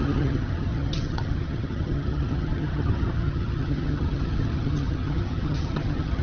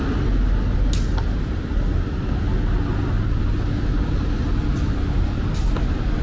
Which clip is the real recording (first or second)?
second